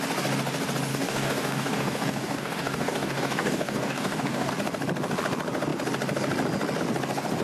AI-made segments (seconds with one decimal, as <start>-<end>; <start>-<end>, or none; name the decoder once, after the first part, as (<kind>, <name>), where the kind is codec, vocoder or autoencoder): 0.9-4.5 (codec, DAC)